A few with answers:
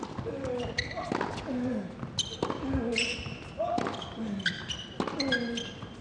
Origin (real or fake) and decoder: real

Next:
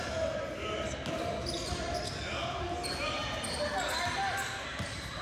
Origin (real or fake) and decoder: real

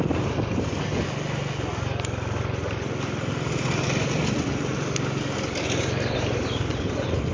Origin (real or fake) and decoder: real